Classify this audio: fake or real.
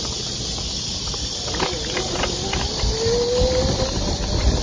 real